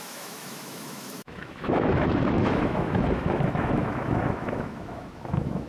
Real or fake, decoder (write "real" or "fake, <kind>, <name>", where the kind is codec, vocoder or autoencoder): fake, autoencoder, DAC-VAE